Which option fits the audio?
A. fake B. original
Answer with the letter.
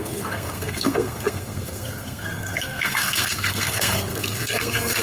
A